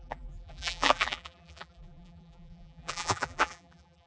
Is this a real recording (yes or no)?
no